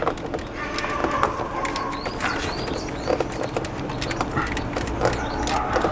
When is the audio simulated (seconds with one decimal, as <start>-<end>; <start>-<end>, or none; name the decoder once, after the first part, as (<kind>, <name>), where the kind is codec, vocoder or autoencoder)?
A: 1.0-4.5 (vocoder, BigVGAN v2)